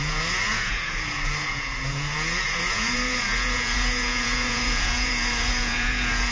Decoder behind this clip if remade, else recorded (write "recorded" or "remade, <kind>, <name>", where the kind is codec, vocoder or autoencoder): remade, vocoder, Vocos